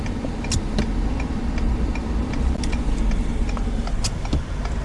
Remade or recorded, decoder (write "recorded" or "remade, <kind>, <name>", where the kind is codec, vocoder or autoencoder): recorded